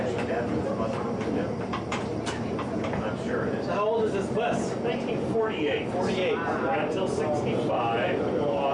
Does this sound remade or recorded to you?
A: recorded